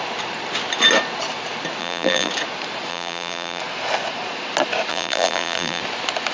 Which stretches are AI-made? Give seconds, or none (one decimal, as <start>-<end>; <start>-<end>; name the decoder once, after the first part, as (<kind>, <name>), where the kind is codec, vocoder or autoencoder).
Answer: 1.8-2.3 (vocoder, BigVGAN v2); 2.9-3.6; 4.9-5.8

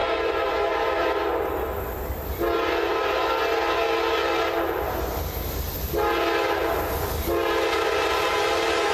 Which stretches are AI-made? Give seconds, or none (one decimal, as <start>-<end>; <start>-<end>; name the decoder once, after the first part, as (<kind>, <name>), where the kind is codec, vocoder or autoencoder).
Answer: none

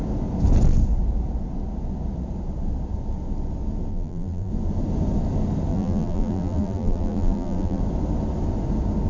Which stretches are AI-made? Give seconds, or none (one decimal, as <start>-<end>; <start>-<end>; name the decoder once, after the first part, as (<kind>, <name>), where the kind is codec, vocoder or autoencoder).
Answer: 3.9-4.5 (vocoder, BigVGAN v2); 5.7-7.8

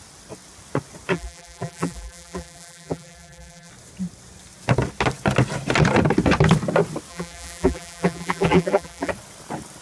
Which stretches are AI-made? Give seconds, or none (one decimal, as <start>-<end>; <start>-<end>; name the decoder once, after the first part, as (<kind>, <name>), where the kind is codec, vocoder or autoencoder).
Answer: 1.1-3.7 (vocoder, BigVGAN v2); 7.1-9.1

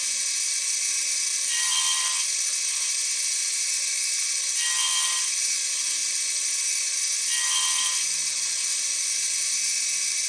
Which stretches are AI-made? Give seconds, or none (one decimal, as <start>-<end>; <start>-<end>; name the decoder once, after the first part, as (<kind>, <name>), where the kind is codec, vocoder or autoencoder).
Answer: 0.0-10.3 (vocoder, BigVGAN v2)

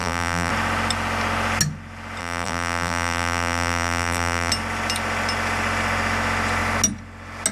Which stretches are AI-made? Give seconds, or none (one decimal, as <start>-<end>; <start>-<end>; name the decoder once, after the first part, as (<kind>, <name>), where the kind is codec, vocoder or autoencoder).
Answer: 0.0-0.5 (vocoder, BigVGAN v2); 2.2-4.5

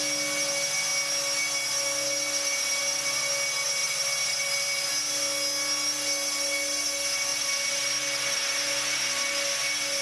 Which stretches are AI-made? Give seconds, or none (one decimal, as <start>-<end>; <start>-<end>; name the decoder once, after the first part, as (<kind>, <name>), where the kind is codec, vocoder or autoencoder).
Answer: 3.8-4.9 (vocoder, BigVGAN v2)